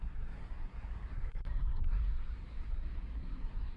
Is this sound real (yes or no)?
no